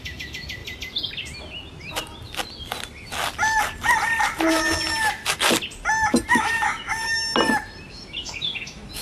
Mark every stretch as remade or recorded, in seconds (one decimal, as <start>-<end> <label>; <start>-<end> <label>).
0.0-0.6 remade; 0.6-4.5 recorded; 4.5-5.2 remade; 5.2-6.3 recorded; 6.3-7.2 remade; 7.2-7.9 recorded; 7.9-9.0 remade